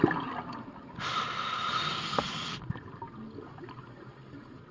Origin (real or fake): real